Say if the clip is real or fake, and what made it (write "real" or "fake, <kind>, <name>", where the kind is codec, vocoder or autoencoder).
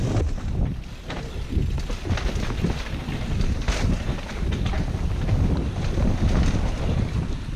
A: real